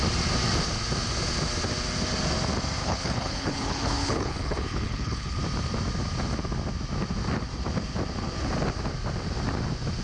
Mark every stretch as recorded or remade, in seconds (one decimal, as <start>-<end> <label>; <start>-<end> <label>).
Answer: 0.0-2.8 recorded; 2.8-5.4 remade; 5.4-10.0 recorded